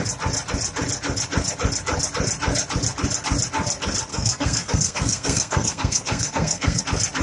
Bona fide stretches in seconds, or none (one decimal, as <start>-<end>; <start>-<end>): 0.0-4.1; 6.8-7.2